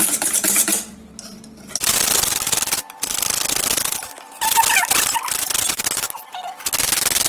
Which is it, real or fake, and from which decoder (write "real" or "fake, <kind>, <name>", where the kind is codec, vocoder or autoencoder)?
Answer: real